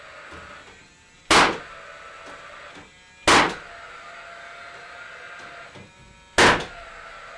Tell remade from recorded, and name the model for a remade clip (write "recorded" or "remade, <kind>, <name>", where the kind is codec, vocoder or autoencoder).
recorded